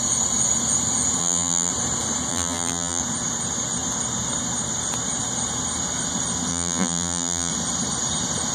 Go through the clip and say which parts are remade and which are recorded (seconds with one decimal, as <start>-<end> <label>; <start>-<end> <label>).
0.0-1.2 recorded; 1.2-1.7 remade; 1.7-2.3 recorded; 2.3-3.0 remade; 3.0-6.5 recorded; 6.5-7.5 remade; 7.5-8.5 recorded